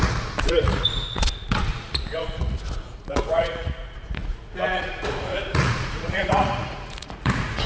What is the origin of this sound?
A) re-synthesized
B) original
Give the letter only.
A